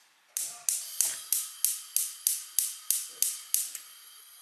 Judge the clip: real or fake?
real